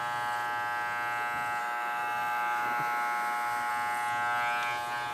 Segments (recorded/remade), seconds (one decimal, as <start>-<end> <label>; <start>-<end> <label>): 0.0-1.6 recorded; 1.6-3.7 remade; 3.7-5.1 recorded